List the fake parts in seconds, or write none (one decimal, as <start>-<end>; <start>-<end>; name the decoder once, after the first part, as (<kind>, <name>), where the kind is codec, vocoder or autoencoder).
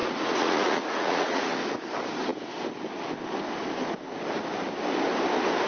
0.0-1.6 (vocoder, Vocos)